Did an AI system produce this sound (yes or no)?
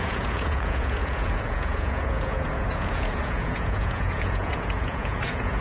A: yes